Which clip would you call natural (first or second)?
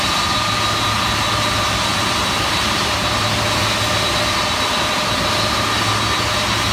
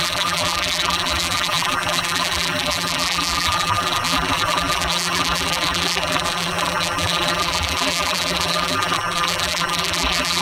first